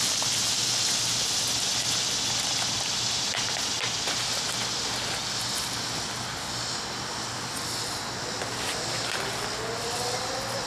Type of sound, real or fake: real